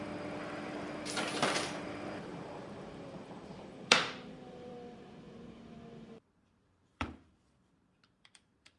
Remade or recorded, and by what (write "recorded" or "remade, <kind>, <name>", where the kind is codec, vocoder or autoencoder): remade, vocoder, BigVGAN v2